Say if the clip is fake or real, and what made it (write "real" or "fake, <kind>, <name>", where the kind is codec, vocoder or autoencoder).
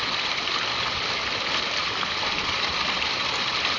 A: fake, vocoder, BigVGAN v2